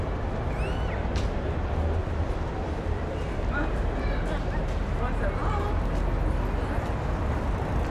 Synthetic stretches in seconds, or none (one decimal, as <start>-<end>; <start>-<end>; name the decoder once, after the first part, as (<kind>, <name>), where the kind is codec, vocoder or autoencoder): none